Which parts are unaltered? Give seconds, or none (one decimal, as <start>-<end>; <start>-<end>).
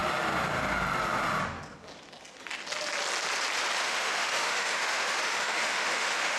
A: 0.0-3.8